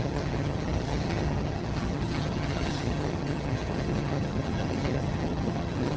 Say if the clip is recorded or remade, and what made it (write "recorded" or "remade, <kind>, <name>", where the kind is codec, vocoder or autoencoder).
remade, vocoder, HiFi-GAN